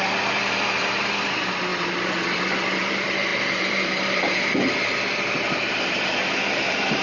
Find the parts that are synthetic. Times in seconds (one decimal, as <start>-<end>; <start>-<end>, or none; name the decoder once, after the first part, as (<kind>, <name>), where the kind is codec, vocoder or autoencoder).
0.0-7.0 (vocoder, BigVGAN v2)